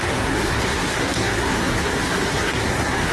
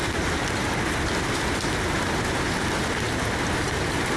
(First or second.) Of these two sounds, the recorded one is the second